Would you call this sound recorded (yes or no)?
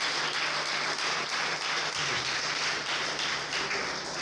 yes